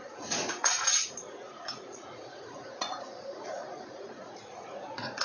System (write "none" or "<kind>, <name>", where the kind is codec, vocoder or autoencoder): vocoder, Vocos